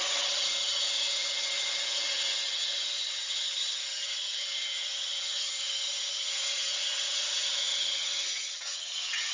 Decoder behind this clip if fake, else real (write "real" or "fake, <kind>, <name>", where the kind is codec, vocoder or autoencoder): fake, vocoder, HiFi-GAN